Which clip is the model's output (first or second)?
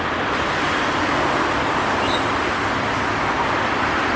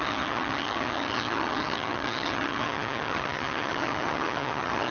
second